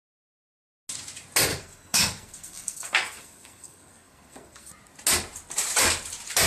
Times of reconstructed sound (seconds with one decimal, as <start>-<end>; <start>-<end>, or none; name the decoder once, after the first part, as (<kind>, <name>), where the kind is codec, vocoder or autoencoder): 1.5-4.7 (codec, SNAC)